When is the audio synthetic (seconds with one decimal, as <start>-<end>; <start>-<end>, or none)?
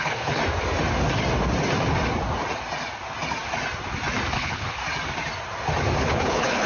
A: 0.0-0.4; 4.3-4.8; 6.0-6.7